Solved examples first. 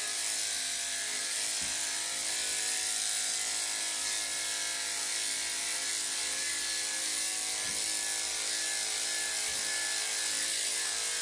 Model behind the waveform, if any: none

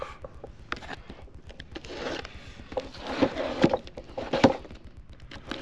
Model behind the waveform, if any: none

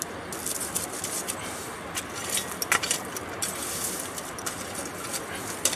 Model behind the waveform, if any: none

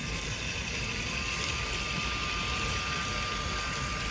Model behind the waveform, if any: none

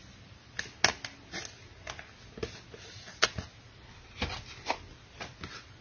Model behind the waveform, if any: none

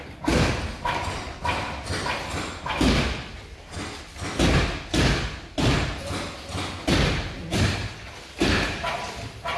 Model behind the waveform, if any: none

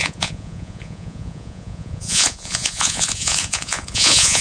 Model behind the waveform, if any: vocoder, Vocos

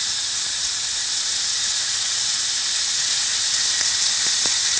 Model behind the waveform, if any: vocoder, Vocos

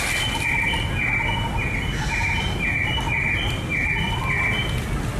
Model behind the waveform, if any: none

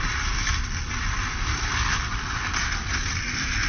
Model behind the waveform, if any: vocoder, BigVGAN v2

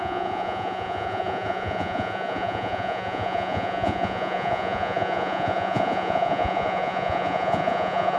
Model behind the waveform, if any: vocoder, Vocos